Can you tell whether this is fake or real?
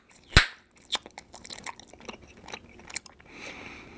real